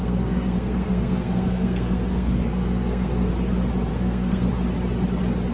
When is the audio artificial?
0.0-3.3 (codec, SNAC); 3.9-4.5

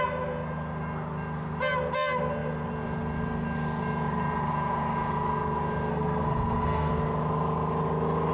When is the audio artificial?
5.9-6.9 (codec, SNAC)